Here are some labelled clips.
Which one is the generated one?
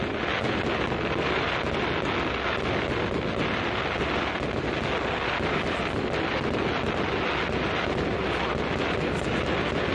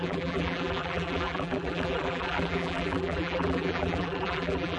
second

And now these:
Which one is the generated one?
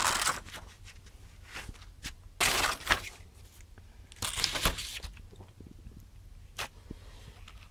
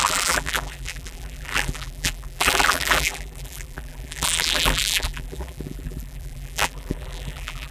second